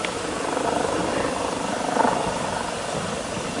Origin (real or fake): real